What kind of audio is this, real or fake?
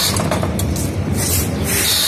real